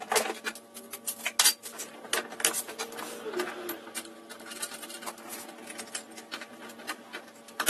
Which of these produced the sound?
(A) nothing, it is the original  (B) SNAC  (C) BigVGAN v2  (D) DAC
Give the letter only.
A